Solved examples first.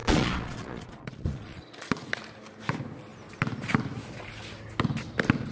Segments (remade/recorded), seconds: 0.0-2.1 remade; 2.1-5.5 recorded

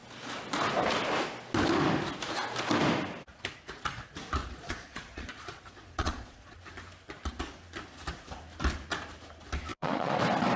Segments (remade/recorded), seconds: 0.0-4.4 recorded; 4.4-6.6 remade; 6.6-9.7 recorded; 9.7-10.2 remade; 10.2-10.6 recorded

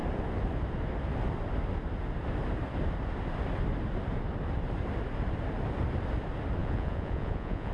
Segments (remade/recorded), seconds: 0.0-6.6 recorded; 6.6-7.7 remade

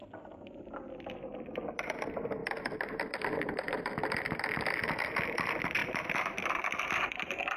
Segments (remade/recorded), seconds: 0.0-7.6 recorded

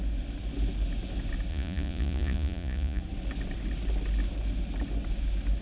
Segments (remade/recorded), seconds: 0.0-1.5 recorded; 1.5-3.0 remade; 3.0-5.6 recorded